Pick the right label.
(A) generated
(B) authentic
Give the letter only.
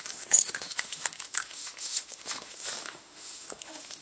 A